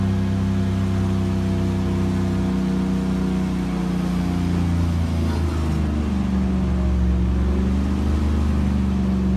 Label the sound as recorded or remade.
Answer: recorded